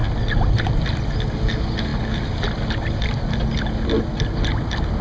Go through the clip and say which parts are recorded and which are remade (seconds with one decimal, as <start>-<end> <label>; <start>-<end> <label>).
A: 0.0-5.0 recorded